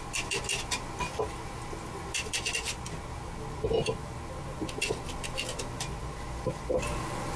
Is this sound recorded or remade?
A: recorded